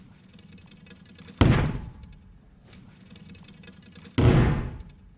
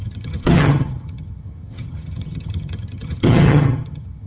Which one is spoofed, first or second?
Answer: second